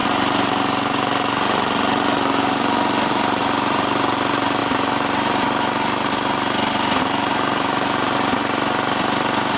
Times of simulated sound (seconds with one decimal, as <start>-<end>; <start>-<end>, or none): 3.1-4.6; 7.0-9.6